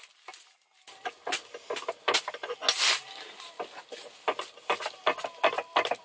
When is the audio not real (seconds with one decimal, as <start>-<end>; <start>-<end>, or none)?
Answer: none